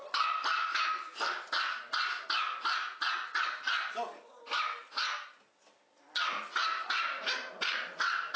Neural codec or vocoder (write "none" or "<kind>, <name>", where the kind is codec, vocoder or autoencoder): none